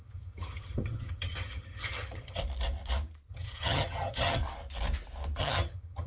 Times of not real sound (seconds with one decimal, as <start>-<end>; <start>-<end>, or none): 0.0-2.4; 3.3-4.4; 5.4-6.1